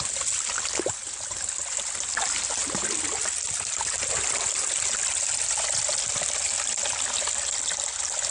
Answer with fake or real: real